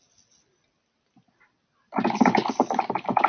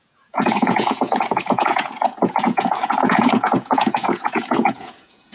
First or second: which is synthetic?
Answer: second